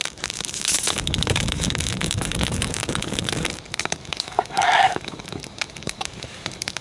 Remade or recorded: remade